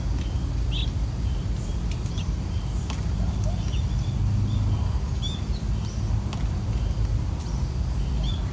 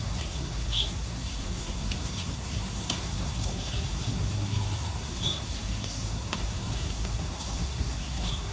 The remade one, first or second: second